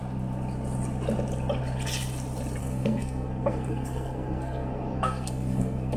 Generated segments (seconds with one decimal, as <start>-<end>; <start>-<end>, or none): 2.6-6.0